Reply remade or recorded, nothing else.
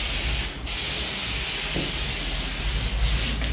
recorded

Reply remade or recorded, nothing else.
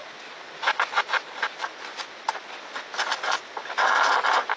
recorded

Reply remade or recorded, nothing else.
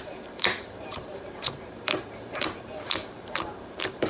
remade